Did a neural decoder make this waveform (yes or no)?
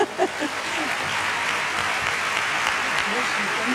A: no